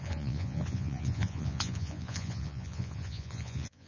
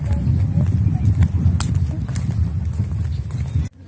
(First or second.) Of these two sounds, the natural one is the second